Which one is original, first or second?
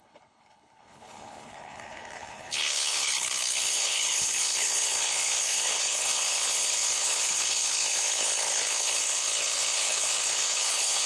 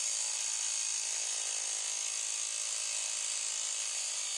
second